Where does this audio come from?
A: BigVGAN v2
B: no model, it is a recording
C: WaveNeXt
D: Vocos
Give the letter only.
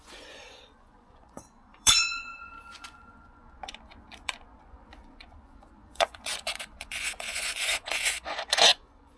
D